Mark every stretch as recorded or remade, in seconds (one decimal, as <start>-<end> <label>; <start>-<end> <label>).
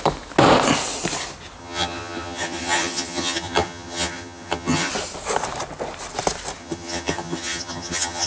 0.0-1.6 recorded; 1.6-4.9 remade; 4.9-6.6 recorded; 6.6-8.3 remade